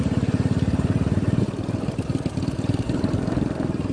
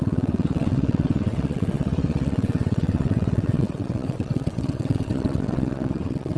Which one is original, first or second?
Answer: first